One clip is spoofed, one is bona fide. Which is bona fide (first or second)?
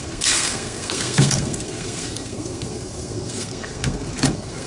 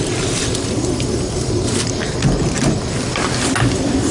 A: second